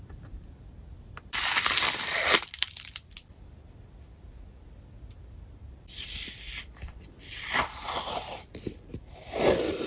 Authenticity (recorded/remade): remade